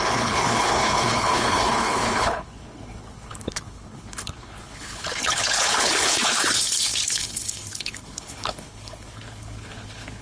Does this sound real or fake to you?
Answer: fake